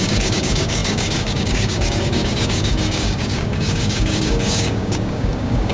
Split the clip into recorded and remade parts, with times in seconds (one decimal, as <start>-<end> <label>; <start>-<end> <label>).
0.0-5.7 remade